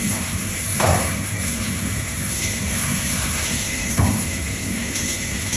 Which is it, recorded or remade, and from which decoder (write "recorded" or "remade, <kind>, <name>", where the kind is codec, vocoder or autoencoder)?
remade, codec, SNAC